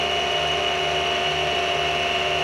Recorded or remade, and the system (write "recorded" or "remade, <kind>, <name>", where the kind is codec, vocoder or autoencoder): recorded